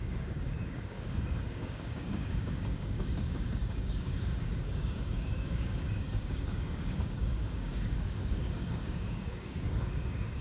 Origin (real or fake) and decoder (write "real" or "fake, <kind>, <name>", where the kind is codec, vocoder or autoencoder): fake, codec, DAC